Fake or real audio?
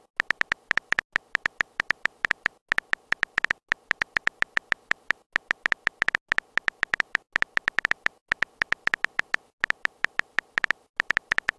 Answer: real